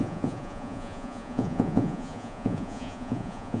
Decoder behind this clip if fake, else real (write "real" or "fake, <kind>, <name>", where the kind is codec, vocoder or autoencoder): fake, vocoder, Vocos